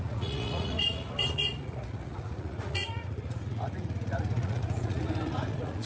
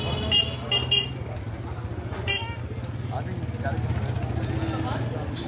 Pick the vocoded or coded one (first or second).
first